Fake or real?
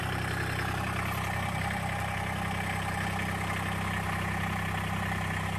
real